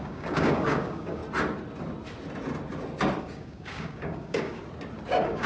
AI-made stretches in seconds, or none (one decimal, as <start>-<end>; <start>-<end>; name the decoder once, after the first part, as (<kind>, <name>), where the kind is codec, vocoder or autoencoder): 0.0-1.2 (codec, DAC); 3.2-4.6; 5.1-5.5